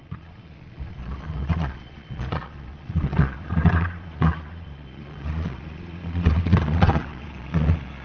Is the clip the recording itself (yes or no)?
no